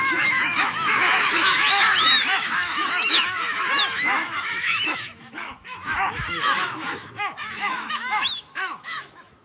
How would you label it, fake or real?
fake